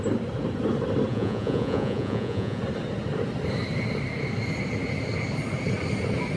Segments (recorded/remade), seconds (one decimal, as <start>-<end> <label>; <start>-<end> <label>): 0.0-1.1 recorded; 1.1-2.6 remade; 2.6-6.4 recorded